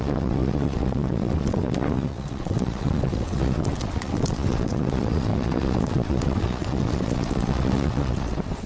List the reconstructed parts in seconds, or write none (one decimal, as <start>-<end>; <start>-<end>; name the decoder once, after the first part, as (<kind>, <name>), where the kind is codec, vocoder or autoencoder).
0.0-8.7 (vocoder, WaveNeXt)